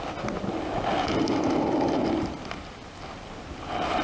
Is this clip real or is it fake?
real